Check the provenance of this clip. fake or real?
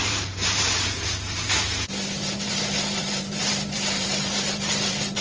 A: fake